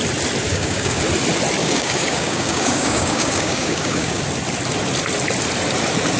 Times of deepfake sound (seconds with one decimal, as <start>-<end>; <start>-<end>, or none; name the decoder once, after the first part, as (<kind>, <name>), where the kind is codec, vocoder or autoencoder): 0.5-1.0 (codec, DAC); 1.6-4.2